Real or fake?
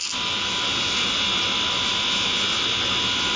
real